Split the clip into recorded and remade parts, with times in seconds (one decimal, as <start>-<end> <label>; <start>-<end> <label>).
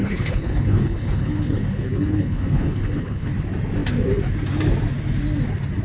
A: 0.0-3.3 remade; 3.3-5.8 recorded